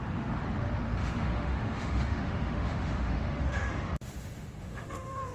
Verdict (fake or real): fake